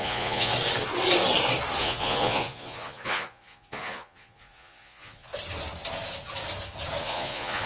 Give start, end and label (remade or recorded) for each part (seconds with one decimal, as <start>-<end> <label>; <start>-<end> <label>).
0.0-0.5 remade; 0.5-1.8 recorded; 1.8-5.3 remade; 5.3-7.0 recorded; 7.0-7.7 remade